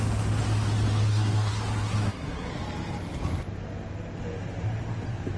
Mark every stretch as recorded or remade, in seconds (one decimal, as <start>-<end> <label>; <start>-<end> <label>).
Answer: 0.0-1.1 recorded; 1.1-2.5 remade; 2.5-5.4 recorded